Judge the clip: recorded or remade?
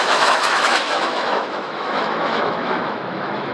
remade